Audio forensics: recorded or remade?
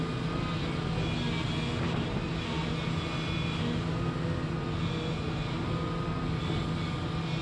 recorded